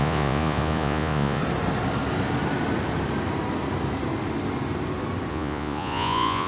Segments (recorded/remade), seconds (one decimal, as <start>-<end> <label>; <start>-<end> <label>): 0.0-1.4 remade; 1.4-5.3 recorded; 5.3-6.5 remade